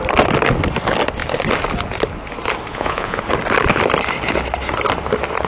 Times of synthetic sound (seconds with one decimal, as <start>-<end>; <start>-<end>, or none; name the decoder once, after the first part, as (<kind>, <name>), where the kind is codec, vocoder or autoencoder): 2.7-3.2 (vocoder, Vocos)